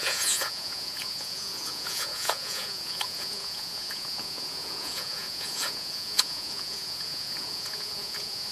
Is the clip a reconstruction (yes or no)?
yes